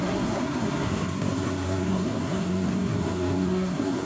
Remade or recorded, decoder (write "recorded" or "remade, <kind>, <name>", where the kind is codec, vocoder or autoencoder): remade, codec, SNAC